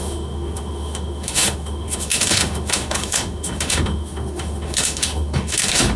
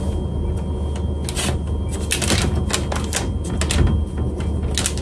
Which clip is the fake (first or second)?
first